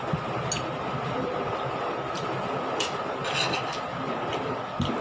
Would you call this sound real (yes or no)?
yes